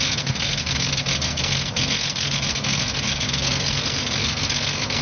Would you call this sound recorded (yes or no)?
no